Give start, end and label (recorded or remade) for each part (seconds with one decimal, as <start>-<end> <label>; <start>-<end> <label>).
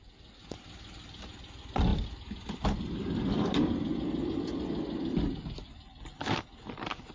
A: 0.0-7.1 recorded